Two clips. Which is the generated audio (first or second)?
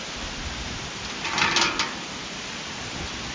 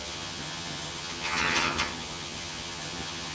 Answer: second